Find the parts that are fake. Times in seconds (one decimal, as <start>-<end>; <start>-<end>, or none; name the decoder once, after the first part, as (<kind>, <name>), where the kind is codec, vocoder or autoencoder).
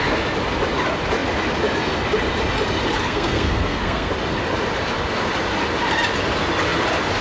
3.0-4.1 (codec, SNAC)